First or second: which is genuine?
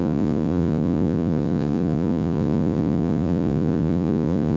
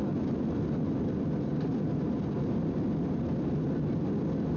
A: second